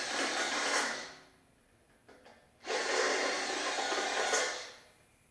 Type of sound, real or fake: real